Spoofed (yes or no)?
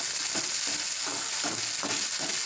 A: no